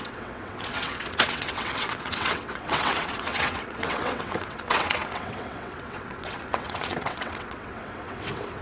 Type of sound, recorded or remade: remade